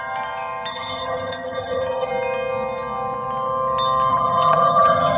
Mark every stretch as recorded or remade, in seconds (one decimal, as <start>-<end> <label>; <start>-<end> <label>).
0.0-0.7 recorded; 0.7-2.1 remade; 2.1-4.1 recorded; 4.1-5.2 remade